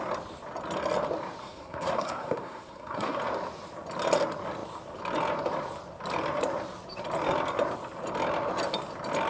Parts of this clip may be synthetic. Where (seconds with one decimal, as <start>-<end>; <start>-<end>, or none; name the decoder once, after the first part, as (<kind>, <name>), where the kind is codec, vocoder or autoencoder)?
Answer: 1.4-3.2 (codec, SNAC)